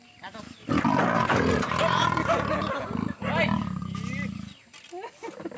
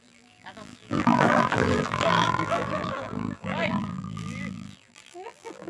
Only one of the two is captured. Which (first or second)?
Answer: first